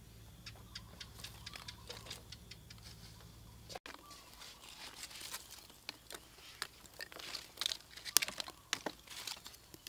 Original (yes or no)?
yes